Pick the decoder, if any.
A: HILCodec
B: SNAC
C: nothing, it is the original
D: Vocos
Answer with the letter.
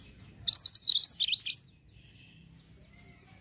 C